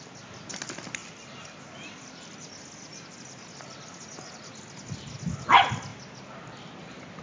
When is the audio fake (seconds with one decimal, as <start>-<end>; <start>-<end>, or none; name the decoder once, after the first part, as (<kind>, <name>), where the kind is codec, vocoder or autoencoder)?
none